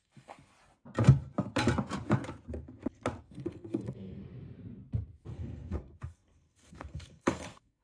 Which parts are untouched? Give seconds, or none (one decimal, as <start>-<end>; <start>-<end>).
0.5-3.2; 4.2-5.3